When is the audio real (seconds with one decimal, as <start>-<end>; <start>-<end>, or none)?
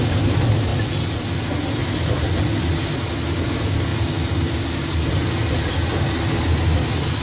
0.0-7.2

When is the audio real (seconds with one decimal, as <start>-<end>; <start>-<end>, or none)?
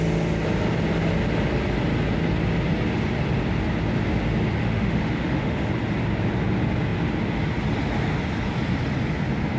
0.0-4.6; 5.7-9.6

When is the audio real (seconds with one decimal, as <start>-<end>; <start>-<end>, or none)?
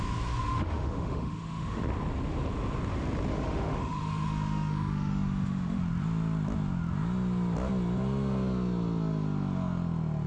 0.0-0.4; 1.8-3.3; 5.8-10.3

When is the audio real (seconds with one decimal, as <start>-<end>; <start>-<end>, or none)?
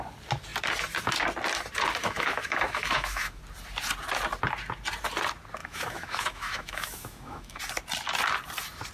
0.0-2.0; 3.4-5.6; 7.6-8.9